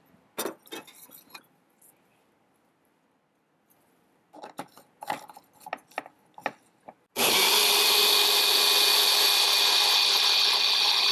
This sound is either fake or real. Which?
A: real